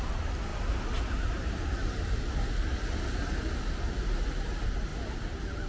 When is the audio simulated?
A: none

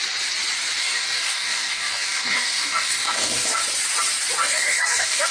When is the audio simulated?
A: 0.8-3.6; 4.4-5.3

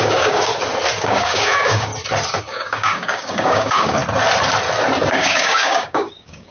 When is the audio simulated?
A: 0.0-0.5; 1.0-1.9; 2.4-4.0; 5.1-6.5